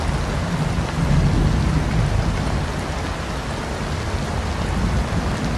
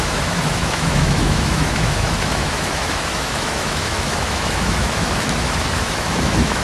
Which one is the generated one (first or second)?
second